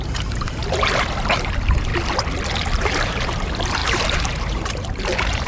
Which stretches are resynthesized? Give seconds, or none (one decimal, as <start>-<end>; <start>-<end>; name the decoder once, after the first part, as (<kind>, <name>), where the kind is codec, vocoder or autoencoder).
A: 0.0-0.6 (vocoder, BigVGAN v2); 1.3-1.9; 2.8-5.5